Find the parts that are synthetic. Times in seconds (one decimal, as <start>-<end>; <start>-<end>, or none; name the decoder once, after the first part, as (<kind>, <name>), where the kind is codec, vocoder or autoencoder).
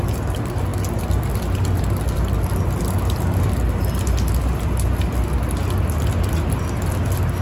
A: none